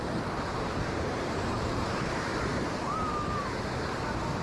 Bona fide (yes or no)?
no